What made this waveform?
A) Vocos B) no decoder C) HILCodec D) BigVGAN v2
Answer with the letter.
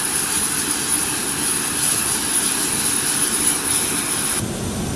B